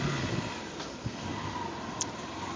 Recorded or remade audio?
recorded